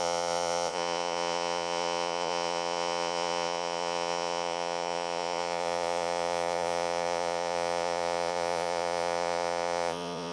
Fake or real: fake